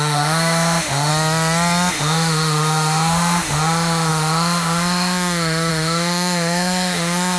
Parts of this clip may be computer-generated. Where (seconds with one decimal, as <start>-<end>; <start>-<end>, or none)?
0.0-1.1; 1.9-7.4